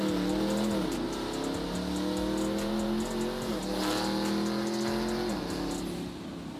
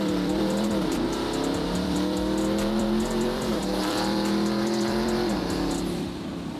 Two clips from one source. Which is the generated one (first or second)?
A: second